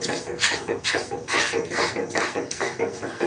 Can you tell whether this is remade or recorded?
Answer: remade